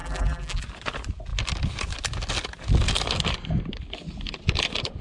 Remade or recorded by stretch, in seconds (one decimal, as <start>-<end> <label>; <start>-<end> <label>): 0.0-0.6 remade; 0.6-5.0 recorded